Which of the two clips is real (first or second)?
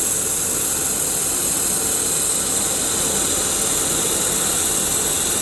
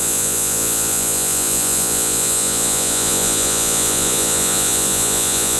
first